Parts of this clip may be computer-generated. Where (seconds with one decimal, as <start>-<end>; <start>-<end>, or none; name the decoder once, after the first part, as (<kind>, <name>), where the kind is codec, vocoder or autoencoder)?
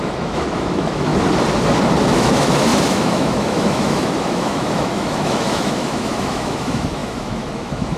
0.0-1.1 (autoencoder, DAC-VAE); 2.0-8.0